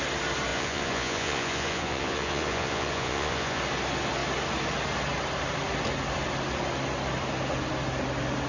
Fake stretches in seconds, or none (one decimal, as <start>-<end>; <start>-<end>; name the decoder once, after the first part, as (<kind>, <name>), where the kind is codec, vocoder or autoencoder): 0.5-3.6 (vocoder, Vocos)

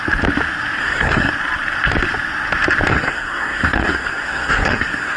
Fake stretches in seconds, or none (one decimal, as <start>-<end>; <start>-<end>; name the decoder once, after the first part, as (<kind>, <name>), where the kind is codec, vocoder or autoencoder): 0.8-1.3 (codec, SNAC); 2.9-5.2

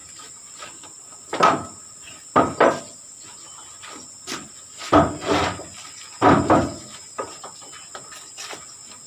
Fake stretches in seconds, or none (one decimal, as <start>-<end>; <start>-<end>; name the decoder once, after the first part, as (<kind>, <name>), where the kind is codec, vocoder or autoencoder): none

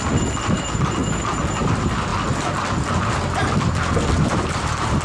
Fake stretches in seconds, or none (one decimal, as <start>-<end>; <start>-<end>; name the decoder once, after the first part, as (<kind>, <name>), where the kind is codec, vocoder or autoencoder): 0.0-1.0 (vocoder, BigVGAN v2); 1.6-2.1; 4.1-5.0

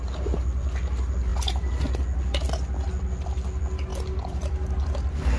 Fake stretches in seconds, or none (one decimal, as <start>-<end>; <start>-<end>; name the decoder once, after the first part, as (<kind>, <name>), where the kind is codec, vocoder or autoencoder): none

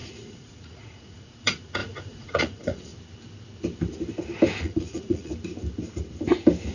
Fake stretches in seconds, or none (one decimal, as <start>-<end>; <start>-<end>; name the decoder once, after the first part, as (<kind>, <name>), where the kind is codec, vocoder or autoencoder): 0.0-2.9 (vocoder, Vocos); 4.6-5.3

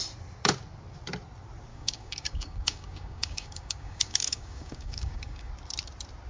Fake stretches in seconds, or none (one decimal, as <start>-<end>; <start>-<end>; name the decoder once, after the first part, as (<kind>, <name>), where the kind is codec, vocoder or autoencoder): 1.7-5.5 (codec, DAC)

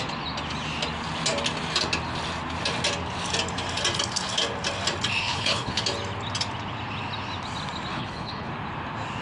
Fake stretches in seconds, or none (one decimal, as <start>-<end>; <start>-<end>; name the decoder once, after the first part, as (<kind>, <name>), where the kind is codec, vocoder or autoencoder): 5.2-5.8 (codec, HILCodec); 7.9-8.5